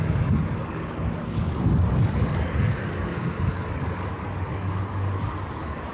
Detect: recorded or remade remade